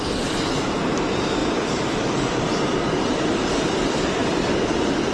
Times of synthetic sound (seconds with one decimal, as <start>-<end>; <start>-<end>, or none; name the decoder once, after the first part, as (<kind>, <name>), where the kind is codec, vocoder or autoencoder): 1.4-4.5 (vocoder, BigVGAN v2)